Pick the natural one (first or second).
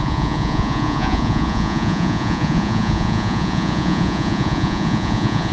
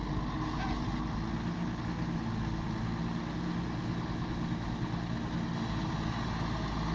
second